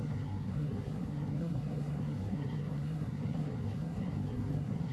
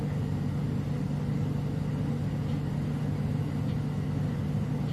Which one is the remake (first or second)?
first